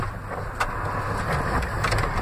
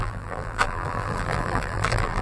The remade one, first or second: second